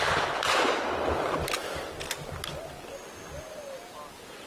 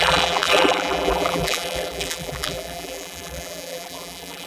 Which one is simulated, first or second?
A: second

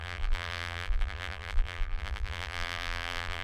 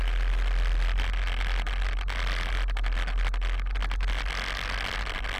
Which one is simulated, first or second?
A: first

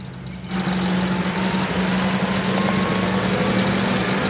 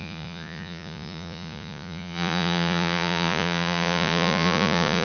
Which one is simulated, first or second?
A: second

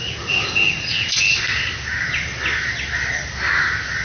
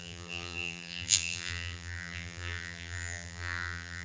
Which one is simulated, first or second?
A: second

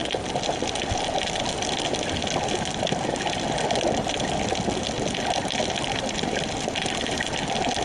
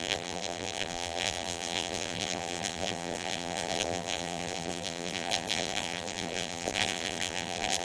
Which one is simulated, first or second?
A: second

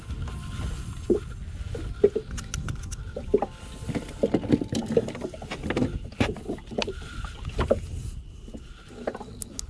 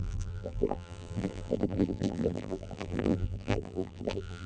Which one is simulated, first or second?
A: second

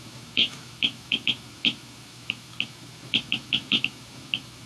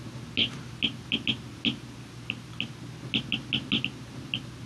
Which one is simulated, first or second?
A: first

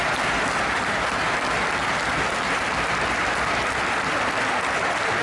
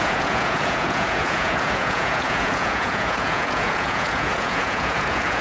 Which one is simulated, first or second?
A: second